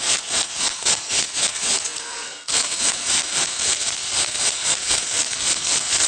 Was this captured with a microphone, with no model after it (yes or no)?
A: no